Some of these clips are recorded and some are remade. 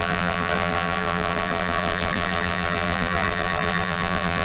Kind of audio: remade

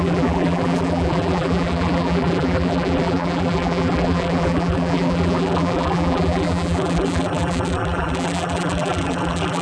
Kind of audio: remade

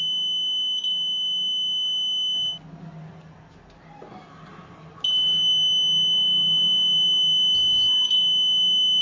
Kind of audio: recorded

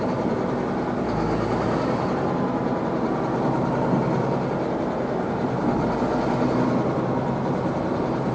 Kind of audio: recorded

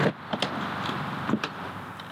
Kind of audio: recorded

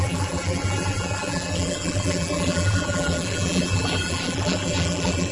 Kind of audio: remade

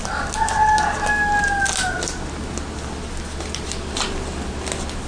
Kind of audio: recorded